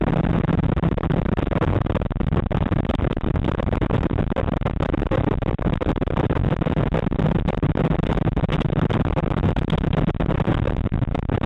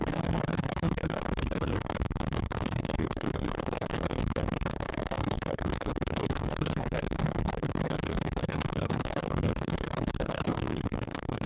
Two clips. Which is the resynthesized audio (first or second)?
second